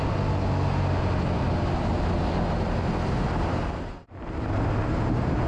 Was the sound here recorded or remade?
recorded